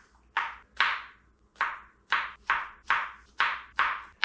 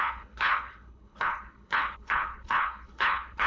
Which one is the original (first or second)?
first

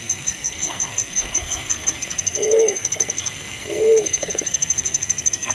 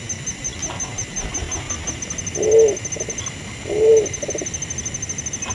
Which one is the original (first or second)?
second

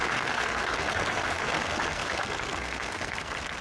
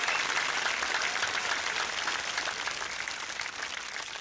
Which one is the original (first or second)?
second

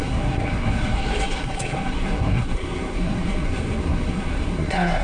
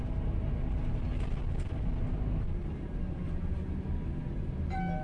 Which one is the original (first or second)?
second